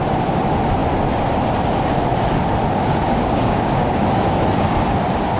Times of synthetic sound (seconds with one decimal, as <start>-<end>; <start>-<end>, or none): 3.0-4.0